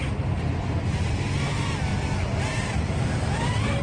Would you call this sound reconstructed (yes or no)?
no